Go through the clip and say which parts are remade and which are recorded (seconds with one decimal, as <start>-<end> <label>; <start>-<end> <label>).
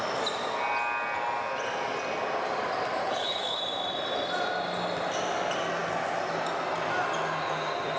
0.0-3.0 recorded; 3.0-3.6 remade; 3.6-8.0 recorded